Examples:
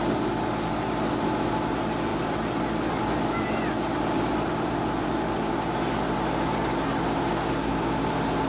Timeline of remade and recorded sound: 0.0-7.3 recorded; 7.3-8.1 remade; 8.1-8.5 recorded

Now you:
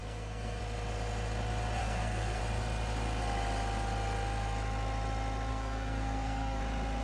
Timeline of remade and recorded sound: 0.0-0.6 remade; 0.6-1.8 recorded; 1.8-2.4 remade; 2.4-5.5 recorded; 5.5-6.6 remade; 6.6-7.0 recorded

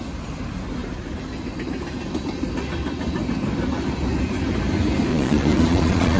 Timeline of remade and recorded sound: 0.0-5.1 recorded; 5.1-6.2 remade

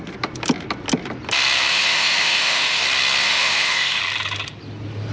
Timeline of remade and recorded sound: 0.0-1.7 recorded; 1.7-2.8 remade; 2.8-3.2 recorded; 3.2-4.0 remade; 4.0-5.1 recorded

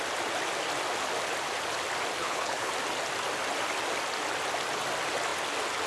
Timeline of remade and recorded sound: 0.0-2.2 recorded; 2.2-2.7 remade; 2.7-5.9 recorded

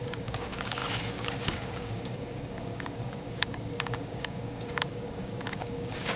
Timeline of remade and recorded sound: 0.0-6.2 remade

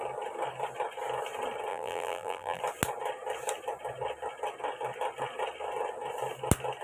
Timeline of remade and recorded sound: 0.0-1.7 recorded; 1.7-2.6 remade; 2.6-6.8 recorded